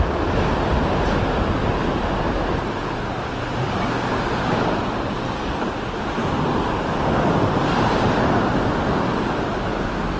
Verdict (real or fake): real